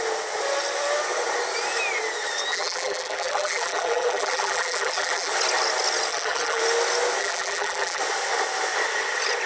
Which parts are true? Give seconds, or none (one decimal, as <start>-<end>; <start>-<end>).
0.0-2.5; 5.3-6.1; 6.6-7.2; 8.0-9.5